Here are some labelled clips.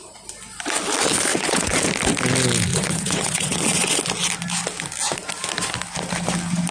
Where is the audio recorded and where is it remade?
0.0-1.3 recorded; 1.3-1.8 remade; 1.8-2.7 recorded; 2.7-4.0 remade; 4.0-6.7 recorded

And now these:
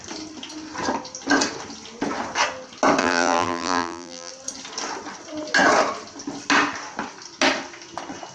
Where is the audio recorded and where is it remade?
0.0-3.0 recorded; 3.0-4.3 remade; 4.3-8.3 recorded

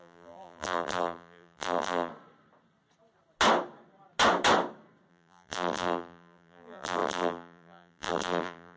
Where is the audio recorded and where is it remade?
0.0-2.1 remade; 2.1-5.1 recorded; 5.1-8.8 remade

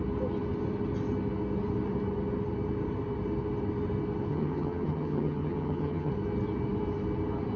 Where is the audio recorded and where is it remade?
0.0-4.3 recorded; 4.3-6.1 remade; 6.1-7.6 recorded

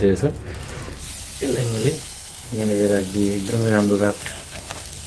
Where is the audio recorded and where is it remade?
0.0-1.6 recorded; 1.6-3.0 remade; 3.0-3.5 recorded; 3.5-5.1 remade

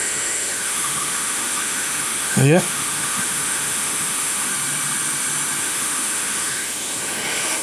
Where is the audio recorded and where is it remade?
0.0-4.5 remade; 4.5-5.6 recorded; 5.6-7.6 remade